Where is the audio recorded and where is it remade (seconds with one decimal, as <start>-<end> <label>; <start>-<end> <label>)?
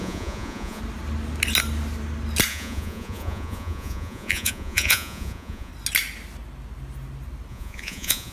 0.0-0.8 remade; 0.8-2.5 recorded; 2.5-5.7 remade; 5.7-7.5 recorded; 7.5-8.3 remade